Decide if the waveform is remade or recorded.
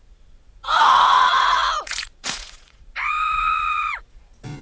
remade